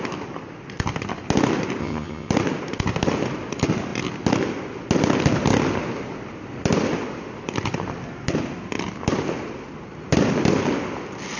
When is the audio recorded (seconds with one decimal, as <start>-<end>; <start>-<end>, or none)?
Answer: 0.0-1.8; 2.3-11.4